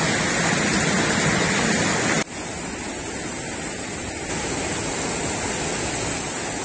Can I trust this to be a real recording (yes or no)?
yes